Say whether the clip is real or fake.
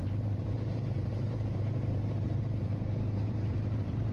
fake